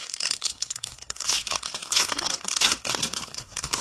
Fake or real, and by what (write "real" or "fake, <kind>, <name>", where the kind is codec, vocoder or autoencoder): fake, codec, SNAC